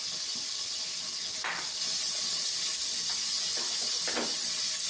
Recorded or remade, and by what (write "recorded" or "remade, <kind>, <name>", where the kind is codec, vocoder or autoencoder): recorded